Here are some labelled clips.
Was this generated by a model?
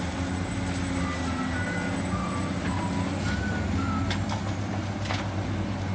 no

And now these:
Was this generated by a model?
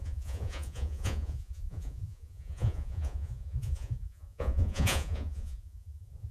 yes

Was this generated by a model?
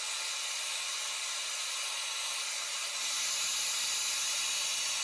no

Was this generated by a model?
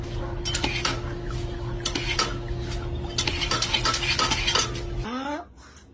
no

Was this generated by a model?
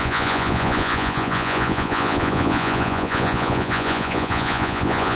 yes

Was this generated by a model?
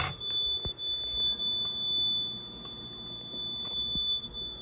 no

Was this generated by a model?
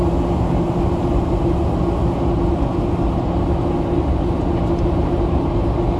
no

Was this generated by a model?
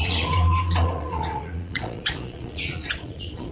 yes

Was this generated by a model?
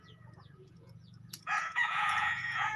yes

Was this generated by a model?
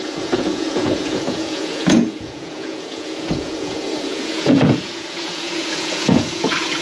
yes